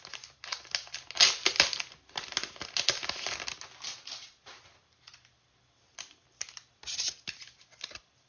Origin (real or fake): real